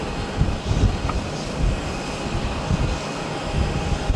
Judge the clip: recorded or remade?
recorded